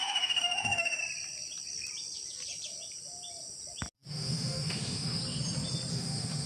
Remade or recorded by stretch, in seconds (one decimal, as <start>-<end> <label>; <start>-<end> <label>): 0.0-1.0 remade; 1.0-4.1 recorded; 4.1-5.2 remade; 5.2-5.9 recorded; 5.9-6.5 remade